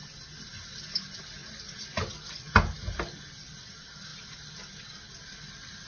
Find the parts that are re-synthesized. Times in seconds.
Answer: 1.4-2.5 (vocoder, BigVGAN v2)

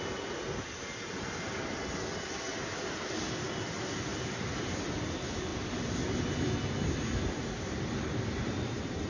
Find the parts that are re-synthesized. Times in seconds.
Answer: 4.1-4.9 (vocoder, BigVGAN v2)

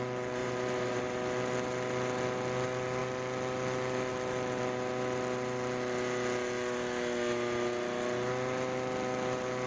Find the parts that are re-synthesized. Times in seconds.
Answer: 0.4-1.0 (vocoder, BigVGAN v2)